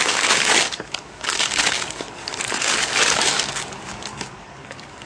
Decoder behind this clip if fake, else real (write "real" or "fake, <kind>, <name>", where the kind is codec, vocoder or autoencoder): fake, codec, DAC